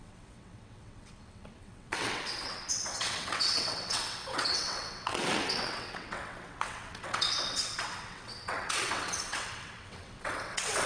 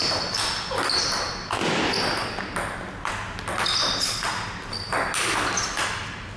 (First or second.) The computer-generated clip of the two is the first